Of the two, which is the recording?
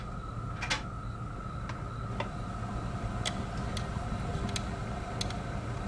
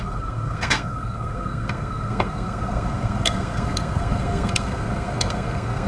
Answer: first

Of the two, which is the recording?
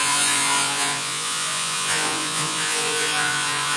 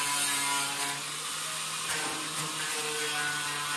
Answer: second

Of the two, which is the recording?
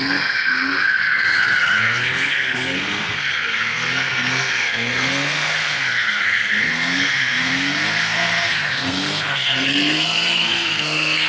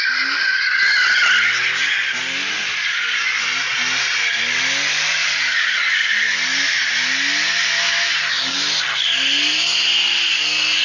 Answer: second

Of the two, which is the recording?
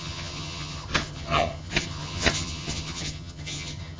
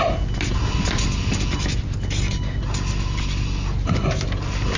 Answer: second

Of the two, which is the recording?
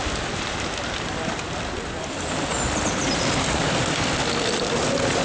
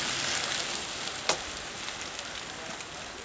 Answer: second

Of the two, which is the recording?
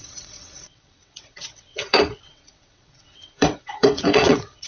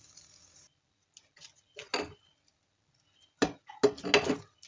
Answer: second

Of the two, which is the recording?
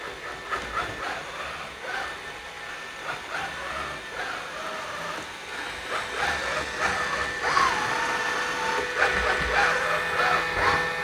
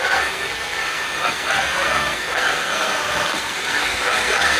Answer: first